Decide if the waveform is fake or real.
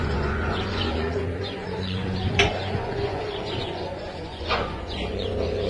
fake